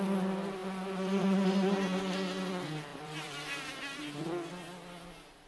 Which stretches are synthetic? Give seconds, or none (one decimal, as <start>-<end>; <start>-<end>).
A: 2.9-3.7